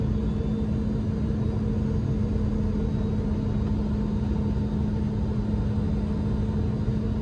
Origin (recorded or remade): recorded